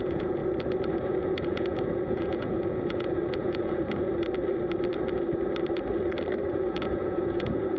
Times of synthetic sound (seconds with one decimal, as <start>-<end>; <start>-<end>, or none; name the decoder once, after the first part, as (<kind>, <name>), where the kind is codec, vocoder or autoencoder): 0.0-0.4 (vocoder, Vocos); 0.9-4.1; 6.5-7.8